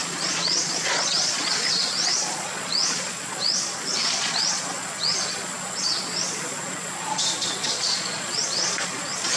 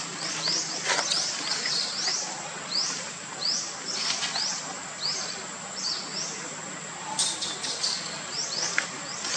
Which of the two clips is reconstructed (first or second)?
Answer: first